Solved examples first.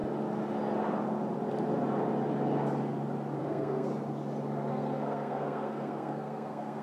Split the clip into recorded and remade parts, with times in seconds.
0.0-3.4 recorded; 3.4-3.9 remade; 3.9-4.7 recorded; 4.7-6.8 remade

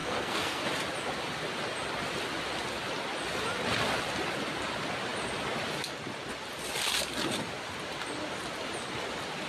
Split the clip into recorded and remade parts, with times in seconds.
0.0-0.6 remade; 0.6-9.5 recorded

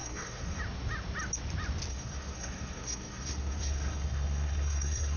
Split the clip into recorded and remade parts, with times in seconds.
0.0-0.6 remade; 0.6-1.9 recorded; 1.9-5.2 remade

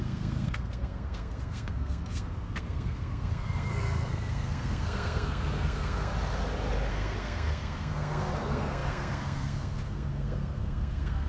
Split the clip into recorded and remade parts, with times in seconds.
0.0-6.1 remade; 6.1-6.9 recorded; 6.9-11.3 remade

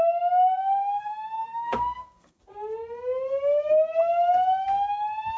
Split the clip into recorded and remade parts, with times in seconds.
0.0-0.8 recorded; 0.8-2.4 remade; 2.4-5.4 recorded

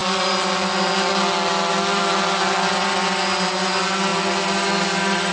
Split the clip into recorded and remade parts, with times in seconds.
0.0-5.3 recorded